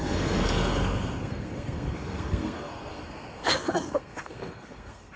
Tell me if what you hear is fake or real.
fake